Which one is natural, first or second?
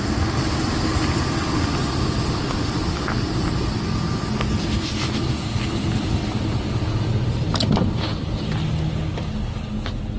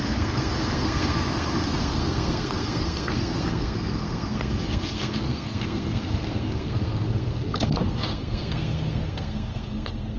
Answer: first